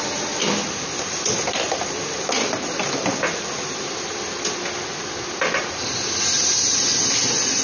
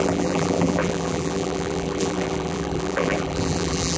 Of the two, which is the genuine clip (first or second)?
first